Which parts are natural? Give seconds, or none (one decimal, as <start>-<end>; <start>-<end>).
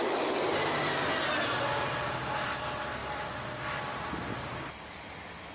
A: 0.0-5.5